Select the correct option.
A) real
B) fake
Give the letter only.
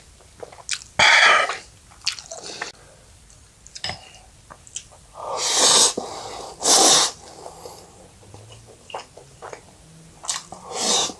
A